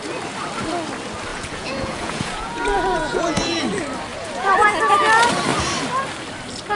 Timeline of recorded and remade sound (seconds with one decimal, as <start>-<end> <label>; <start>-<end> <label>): 0.0-1.3 recorded; 1.3-3.6 remade; 3.6-4.1 recorded; 4.1-4.7 remade; 4.7-6.8 recorded